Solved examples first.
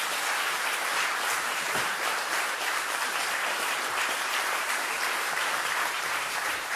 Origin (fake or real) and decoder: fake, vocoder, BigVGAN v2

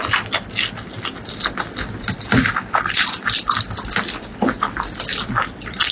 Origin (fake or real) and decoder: real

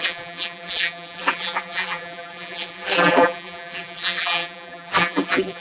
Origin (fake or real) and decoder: fake, vocoder, BigVGAN v2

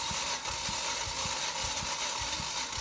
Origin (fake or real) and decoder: real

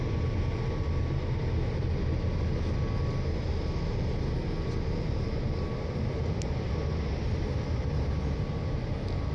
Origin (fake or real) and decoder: real